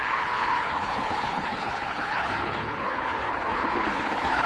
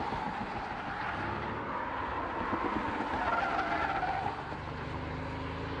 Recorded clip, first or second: second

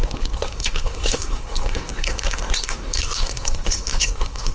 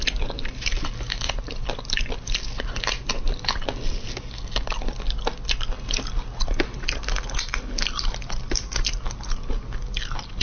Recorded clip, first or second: second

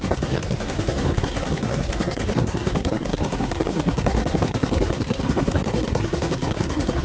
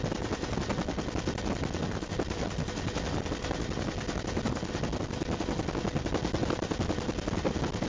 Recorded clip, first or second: second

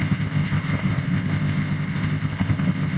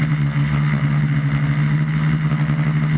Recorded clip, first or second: second